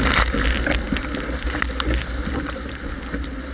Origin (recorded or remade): recorded